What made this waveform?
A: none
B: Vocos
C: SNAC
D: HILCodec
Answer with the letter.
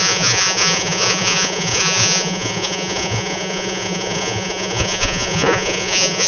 B